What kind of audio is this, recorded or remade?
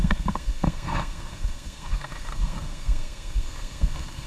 remade